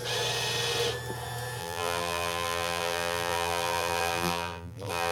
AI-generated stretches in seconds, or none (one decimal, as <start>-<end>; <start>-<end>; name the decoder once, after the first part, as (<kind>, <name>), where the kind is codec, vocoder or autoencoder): 1.6-5.1 (vocoder, BigVGAN v2)